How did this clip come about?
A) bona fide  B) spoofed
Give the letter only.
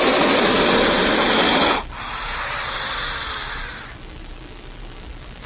A